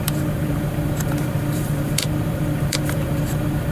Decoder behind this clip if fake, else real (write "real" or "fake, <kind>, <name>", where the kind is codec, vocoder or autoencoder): fake, vocoder, BigVGAN v2